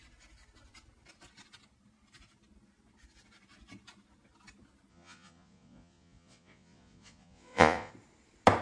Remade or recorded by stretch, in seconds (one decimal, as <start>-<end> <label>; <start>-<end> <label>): 0.0-4.9 recorded; 4.9-7.9 remade; 7.9-8.6 recorded